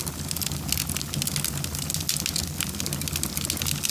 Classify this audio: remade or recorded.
recorded